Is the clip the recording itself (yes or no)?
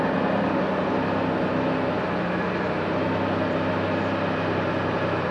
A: yes